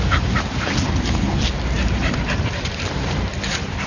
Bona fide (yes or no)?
yes